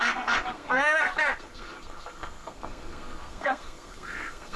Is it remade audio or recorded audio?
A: remade